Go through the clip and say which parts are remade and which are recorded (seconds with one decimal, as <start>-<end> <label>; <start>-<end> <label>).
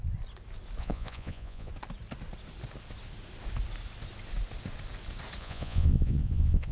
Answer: 0.0-0.8 recorded; 0.8-1.7 remade; 1.7-5.4 recorded; 5.4-6.7 remade